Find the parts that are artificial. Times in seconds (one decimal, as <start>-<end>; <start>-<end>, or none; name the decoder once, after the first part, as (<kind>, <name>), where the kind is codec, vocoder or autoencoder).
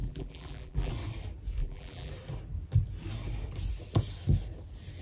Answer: 0.0-0.9 (vocoder, BigVGAN v2); 1.6-2.1